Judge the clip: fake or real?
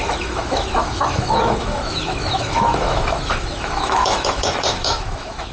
fake